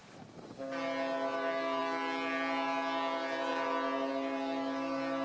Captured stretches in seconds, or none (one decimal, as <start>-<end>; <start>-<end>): 0.0-5.2